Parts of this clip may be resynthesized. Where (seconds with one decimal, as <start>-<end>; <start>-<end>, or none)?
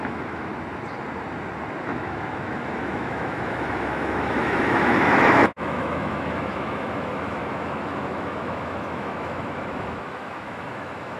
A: 0.0-0.5; 1.8-11.2